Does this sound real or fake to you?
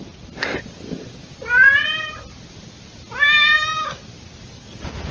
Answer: real